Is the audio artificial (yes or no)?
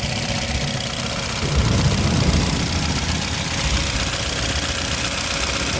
no